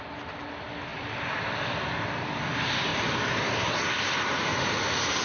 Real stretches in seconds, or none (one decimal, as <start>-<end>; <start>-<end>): 0.0-0.9; 2.5-2.9; 4.1-5.2